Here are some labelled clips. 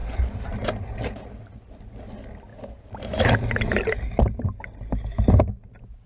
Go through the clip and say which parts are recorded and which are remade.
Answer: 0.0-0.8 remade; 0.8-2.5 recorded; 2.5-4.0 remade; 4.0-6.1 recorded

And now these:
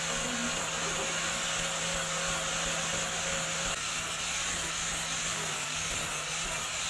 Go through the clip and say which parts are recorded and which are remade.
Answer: 0.0-5.3 recorded; 5.3-5.9 remade; 5.9-6.9 recorded

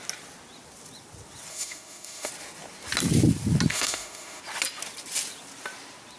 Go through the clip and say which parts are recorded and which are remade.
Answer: 0.0-1.5 recorded; 1.5-2.3 remade; 2.3-3.7 recorded; 3.7-4.4 remade; 4.4-6.2 recorded